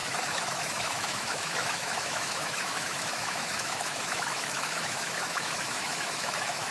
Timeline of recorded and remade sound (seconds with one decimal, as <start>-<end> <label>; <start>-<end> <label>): 0.0-6.7 remade